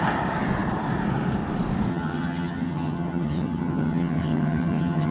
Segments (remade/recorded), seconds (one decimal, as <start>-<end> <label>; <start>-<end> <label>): 0.0-1.9 recorded; 1.9-5.1 remade